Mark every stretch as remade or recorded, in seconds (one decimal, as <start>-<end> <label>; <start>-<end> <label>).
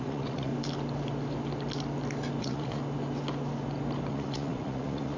0.0-0.5 remade; 0.5-2.4 recorded; 2.4-2.8 remade; 2.8-4.1 recorded; 4.1-5.2 remade